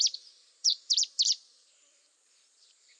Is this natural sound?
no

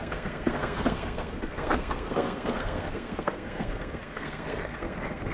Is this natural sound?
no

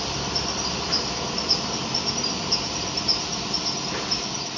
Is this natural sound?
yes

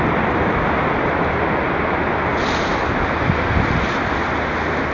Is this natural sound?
yes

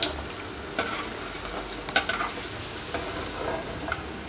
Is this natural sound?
yes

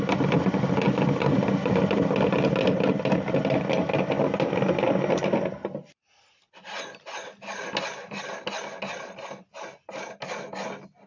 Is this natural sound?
yes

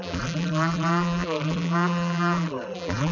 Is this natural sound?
no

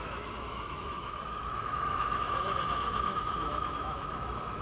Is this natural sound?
no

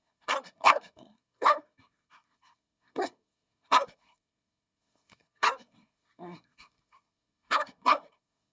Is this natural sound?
no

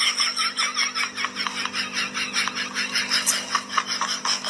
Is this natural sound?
yes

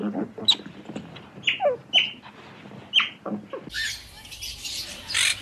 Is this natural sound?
yes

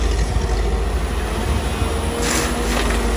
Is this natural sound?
yes